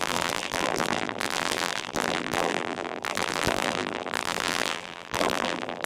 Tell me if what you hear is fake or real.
fake